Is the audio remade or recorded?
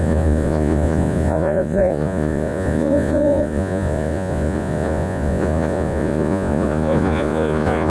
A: remade